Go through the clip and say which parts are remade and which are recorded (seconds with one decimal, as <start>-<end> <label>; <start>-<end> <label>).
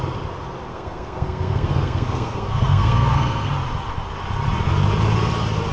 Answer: 0.0-0.7 recorded; 0.7-3.5 remade; 3.5-5.7 recorded